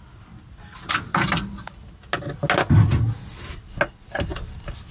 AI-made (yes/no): no